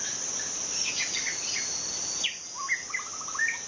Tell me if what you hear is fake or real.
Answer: real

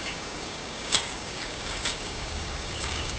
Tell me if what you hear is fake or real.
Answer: fake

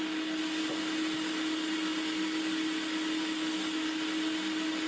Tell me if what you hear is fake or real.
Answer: real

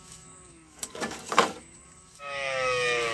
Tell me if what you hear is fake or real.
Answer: fake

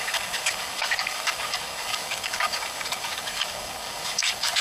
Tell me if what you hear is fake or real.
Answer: fake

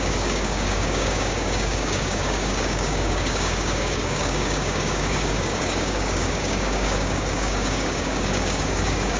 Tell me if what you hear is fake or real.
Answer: fake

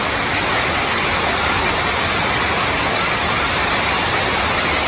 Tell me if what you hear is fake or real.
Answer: real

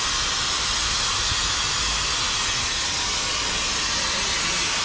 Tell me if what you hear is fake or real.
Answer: real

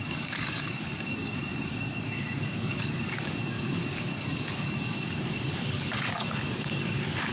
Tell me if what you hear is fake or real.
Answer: fake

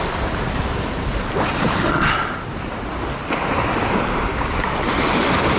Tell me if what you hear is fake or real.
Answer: real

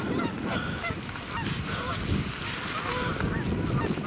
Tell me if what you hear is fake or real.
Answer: real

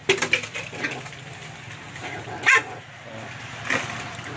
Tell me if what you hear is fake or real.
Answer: real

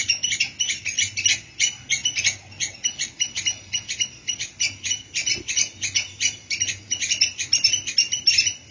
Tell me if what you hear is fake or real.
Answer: real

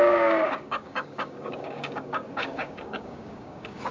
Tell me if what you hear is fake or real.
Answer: fake